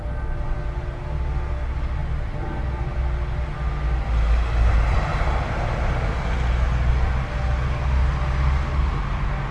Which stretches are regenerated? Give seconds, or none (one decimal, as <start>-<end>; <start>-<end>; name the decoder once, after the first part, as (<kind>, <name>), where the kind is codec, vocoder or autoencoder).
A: 5.1-6.2 (vocoder, BigVGAN v2)